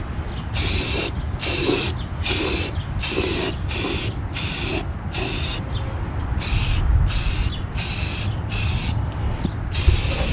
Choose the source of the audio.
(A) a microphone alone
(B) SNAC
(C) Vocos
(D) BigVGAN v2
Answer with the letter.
A